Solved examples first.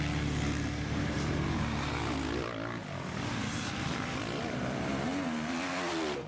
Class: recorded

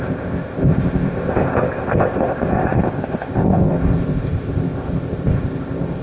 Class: remade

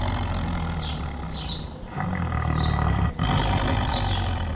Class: recorded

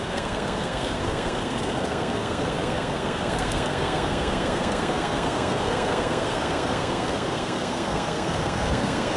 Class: remade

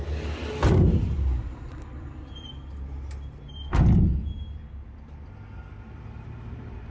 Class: recorded